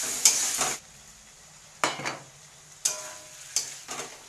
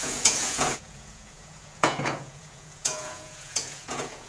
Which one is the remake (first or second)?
second